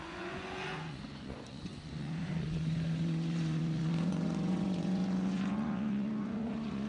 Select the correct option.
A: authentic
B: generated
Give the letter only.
B